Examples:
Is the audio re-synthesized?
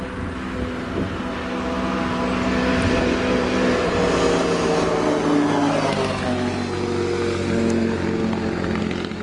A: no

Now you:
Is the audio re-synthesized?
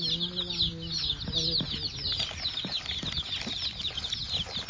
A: no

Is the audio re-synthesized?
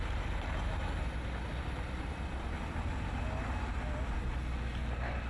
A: no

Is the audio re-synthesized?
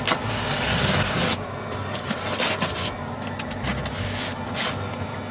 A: no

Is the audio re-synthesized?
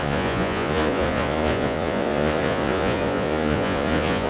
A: yes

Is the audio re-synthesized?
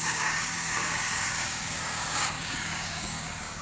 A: yes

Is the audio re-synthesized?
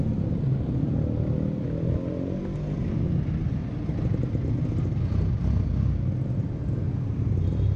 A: no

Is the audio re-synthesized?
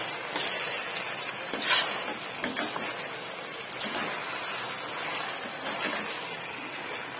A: no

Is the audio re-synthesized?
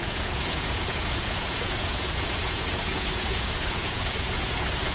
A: yes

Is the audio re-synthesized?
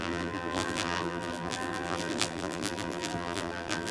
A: yes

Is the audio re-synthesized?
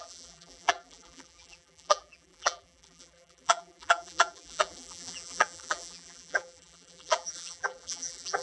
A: yes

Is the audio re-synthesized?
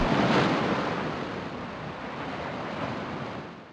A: no